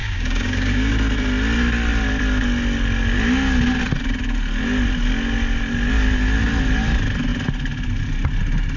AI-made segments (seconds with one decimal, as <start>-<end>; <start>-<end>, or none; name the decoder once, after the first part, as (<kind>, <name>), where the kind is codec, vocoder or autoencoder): 0.0-0.9 (codec, DAC)